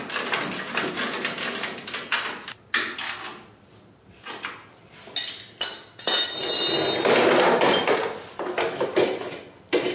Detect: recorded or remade recorded